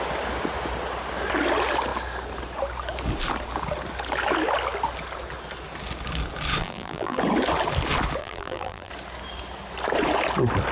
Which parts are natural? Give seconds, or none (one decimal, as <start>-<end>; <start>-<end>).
0.0-6.6; 7.2-8.2; 8.9-10.7